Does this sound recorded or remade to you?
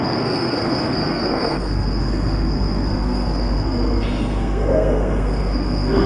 remade